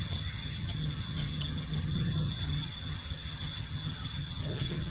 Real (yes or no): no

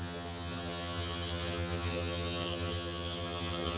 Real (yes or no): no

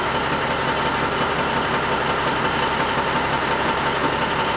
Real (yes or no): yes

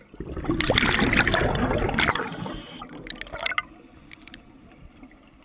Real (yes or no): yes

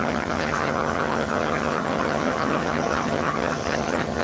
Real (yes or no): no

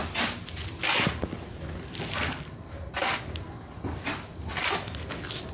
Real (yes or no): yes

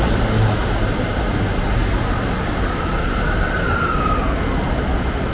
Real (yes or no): yes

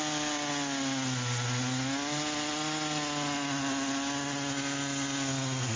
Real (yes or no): yes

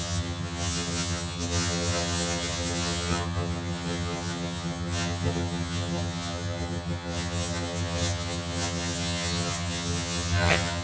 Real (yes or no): no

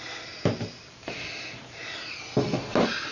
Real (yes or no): yes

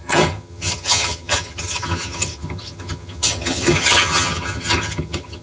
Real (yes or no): no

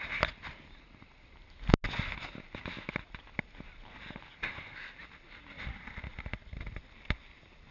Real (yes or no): yes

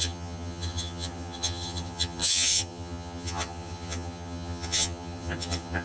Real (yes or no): no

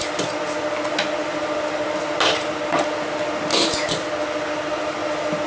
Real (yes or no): yes